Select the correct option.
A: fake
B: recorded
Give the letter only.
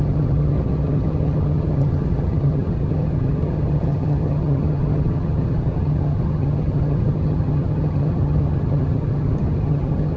A